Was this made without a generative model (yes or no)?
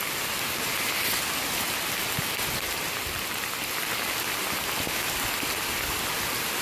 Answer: yes